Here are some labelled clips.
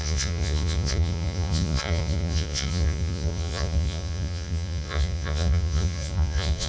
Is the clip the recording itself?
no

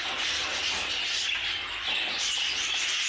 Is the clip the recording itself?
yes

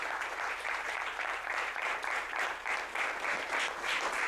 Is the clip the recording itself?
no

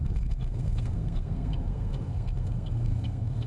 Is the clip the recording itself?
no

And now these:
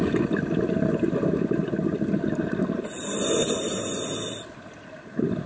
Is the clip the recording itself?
yes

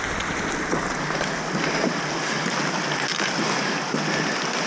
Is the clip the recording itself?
yes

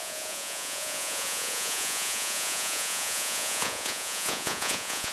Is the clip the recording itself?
no